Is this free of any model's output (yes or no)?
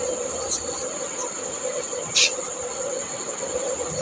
yes